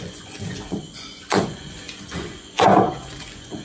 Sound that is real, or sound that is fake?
fake